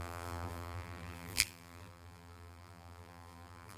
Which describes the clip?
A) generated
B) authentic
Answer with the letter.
A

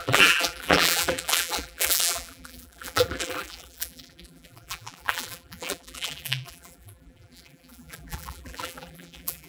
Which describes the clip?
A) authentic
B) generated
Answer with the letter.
B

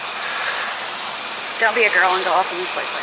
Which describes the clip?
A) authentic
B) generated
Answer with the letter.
A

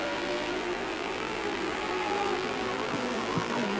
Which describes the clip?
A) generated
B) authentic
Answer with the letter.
A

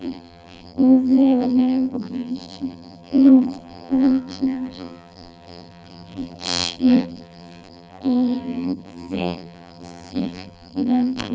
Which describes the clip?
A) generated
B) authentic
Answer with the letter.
A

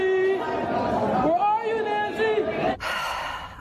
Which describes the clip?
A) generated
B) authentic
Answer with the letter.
B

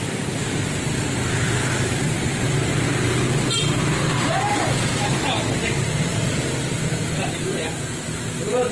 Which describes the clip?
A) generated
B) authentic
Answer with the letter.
A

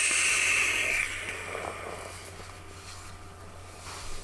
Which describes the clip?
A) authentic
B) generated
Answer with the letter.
A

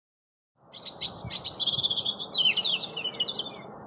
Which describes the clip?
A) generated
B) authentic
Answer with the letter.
B